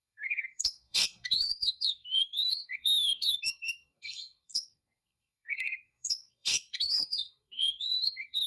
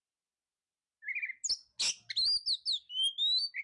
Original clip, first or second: second